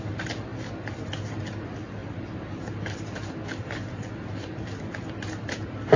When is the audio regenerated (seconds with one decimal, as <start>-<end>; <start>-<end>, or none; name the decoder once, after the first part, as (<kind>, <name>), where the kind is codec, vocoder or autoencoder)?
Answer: none